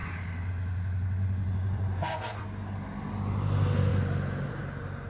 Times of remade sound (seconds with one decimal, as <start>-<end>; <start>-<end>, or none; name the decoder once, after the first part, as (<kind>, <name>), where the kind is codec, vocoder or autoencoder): 1.2-2.4 (vocoder, Vocos)